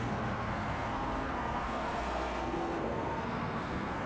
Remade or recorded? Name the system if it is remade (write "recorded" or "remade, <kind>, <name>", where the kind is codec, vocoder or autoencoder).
remade, codec, SNAC